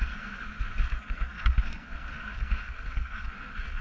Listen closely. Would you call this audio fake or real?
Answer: fake